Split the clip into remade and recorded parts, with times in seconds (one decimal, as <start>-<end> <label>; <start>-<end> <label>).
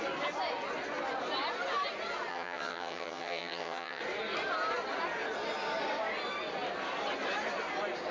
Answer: 0.0-2.3 recorded; 2.3-4.0 remade; 4.0-8.1 recorded